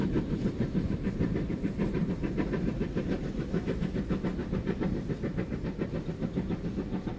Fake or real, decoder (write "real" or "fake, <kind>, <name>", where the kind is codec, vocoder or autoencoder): real